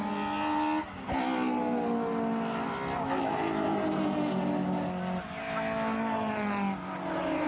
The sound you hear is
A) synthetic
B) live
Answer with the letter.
B